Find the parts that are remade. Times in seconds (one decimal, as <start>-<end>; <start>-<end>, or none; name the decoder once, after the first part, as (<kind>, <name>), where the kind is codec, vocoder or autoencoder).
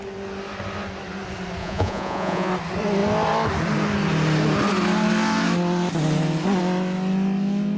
1.6-2.5 (vocoder, Vocos)